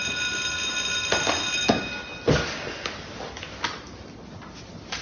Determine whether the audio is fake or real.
real